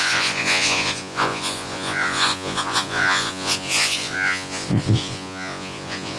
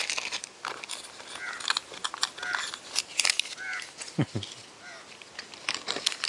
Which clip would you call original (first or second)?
second